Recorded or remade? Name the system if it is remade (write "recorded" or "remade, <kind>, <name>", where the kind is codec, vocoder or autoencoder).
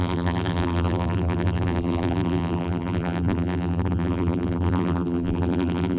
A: remade, vocoder, BigVGAN v2